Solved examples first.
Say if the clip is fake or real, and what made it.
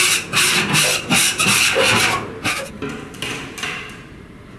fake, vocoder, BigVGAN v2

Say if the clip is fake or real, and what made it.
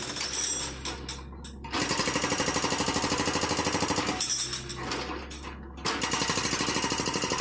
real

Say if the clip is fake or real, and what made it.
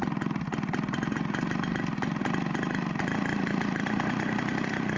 real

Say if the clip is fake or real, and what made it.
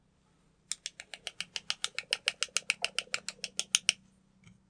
real